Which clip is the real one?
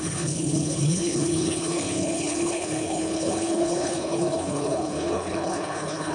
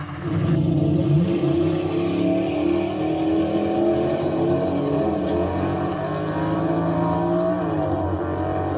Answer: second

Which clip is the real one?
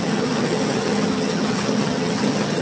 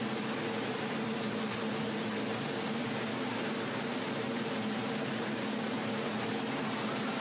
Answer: second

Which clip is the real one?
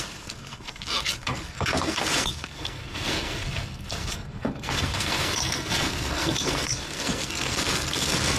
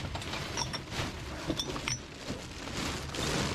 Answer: second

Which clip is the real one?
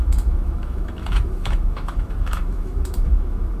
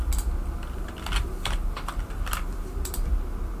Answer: second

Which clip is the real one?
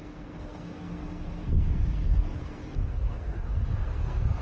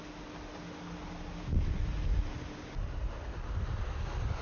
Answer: second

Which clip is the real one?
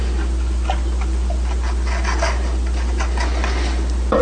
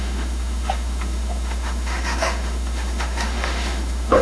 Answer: first